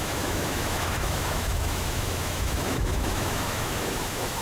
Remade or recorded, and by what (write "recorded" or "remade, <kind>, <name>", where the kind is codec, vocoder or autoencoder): remade, autoencoder, DAC-VAE